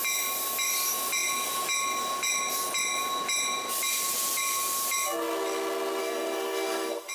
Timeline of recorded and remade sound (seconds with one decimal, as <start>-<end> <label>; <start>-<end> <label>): 0.0-6.0 recorded; 6.0-7.1 remade